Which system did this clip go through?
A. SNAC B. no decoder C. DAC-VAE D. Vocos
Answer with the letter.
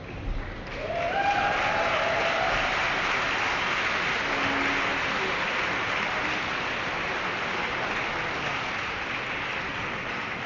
B